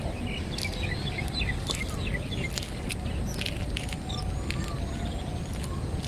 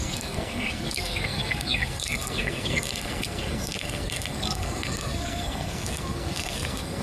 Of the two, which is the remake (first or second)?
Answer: second